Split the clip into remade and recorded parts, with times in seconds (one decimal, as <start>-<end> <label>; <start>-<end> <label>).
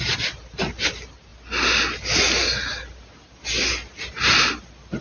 0.0-5.0 recorded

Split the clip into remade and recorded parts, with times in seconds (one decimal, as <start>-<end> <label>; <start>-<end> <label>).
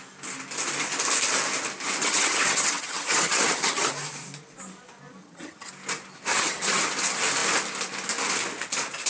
0.0-2.0 recorded; 2.0-3.9 remade; 3.9-5.2 recorded; 5.2-5.7 remade; 5.7-6.3 recorded; 6.3-6.8 remade; 6.8-9.1 recorded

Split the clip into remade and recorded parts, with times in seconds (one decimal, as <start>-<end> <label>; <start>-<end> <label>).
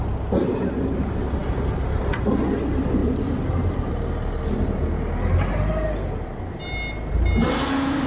0.0-8.1 recorded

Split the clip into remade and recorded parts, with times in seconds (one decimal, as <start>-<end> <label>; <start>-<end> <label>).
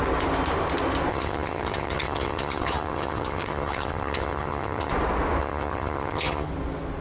0.0-1.1 recorded; 1.1-4.9 remade; 4.9-5.4 recorded; 5.4-6.5 remade; 6.5-7.0 recorded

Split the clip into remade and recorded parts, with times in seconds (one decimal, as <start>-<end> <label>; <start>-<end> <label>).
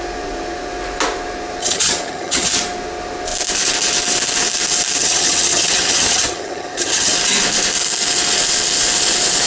0.0-1.6 recorded; 1.6-2.5 remade; 2.5-5.0 recorded; 5.0-7.1 remade; 7.1-9.5 recorded